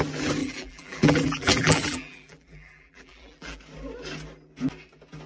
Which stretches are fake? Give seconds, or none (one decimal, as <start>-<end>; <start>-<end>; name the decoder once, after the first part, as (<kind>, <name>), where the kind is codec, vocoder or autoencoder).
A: 0.4-3.6 (vocoder, BigVGAN v2)